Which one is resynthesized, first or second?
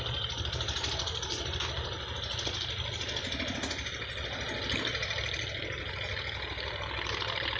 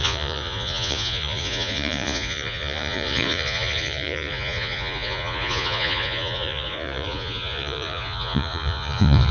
second